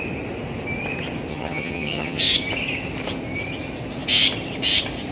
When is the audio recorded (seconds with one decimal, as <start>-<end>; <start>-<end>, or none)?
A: 0.0-1.3; 2.2-5.1